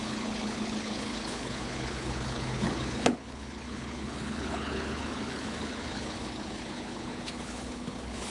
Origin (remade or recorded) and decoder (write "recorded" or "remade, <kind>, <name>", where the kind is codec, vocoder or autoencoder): remade, codec, HILCodec